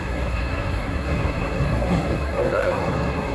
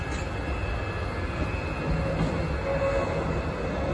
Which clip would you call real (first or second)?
second